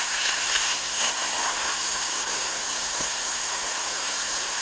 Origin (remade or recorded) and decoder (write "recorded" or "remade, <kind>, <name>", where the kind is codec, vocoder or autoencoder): remade, codec, SNAC